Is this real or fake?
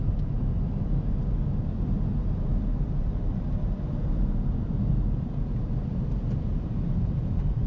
real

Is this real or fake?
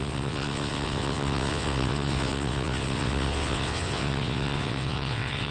fake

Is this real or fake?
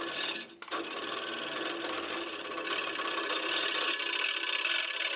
real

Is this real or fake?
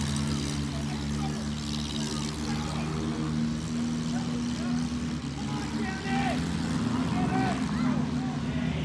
real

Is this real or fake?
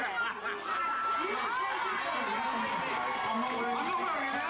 real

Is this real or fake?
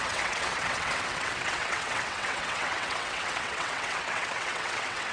fake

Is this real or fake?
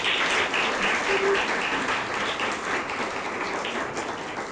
real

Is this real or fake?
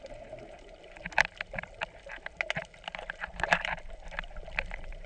real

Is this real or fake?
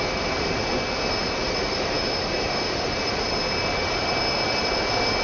real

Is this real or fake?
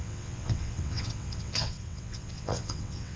fake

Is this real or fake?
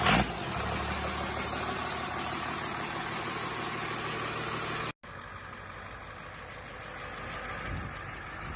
real